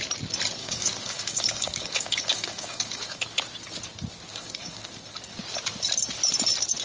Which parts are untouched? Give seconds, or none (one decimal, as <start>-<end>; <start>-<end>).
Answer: 0.0-0.6; 3.2-4.3; 5.0-6.8

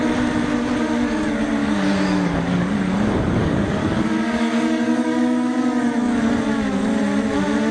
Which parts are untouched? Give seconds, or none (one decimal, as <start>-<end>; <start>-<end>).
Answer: 0.0-1.6; 6.2-7.7

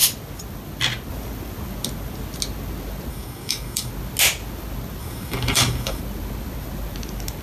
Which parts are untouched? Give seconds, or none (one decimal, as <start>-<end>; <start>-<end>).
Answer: 0.0-3.1; 3.9-5.0; 6.0-7.4

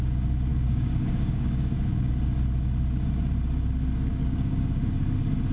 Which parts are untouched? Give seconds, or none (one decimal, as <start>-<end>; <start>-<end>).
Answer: 0.0-0.5; 2.1-4.1; 4.9-5.5

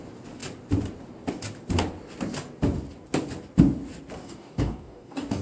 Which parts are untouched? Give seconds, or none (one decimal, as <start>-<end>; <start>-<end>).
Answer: 0.0-4.2